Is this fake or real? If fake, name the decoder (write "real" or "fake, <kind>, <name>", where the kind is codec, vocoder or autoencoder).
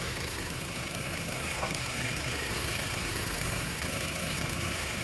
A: fake, codec, SNAC